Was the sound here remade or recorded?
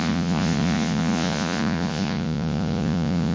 remade